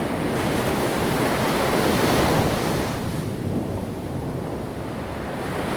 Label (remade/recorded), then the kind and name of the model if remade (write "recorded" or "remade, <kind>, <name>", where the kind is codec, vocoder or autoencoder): recorded